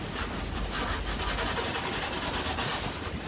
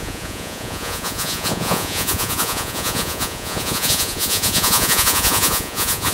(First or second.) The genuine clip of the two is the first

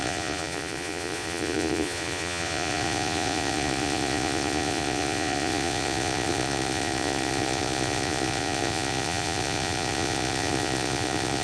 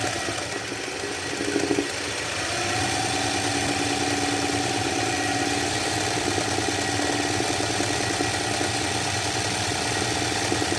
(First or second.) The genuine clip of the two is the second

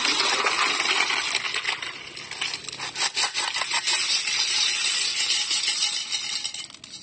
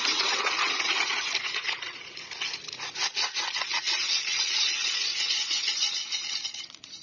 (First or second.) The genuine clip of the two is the first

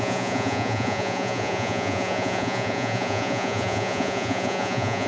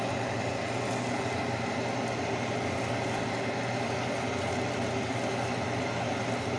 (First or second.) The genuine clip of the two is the second